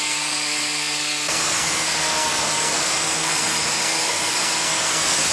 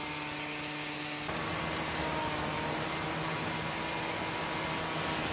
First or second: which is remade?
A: first